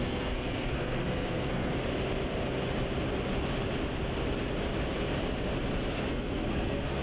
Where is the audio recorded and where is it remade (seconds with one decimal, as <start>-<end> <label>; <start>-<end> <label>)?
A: 0.0-1.7 remade; 1.7-5.9 recorded; 5.9-7.0 remade